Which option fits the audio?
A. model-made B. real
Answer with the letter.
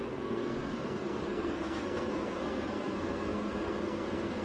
A